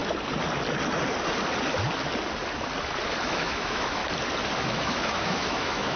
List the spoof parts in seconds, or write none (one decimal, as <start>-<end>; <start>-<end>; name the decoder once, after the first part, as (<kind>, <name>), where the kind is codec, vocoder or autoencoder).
3.2-4.0 (autoencoder, DAC-VAE); 4.6-6.0